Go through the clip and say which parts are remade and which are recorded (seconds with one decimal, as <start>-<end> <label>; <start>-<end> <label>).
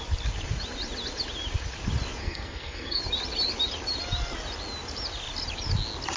0.0-2.2 recorded; 2.2-3.0 remade; 3.0-6.2 recorded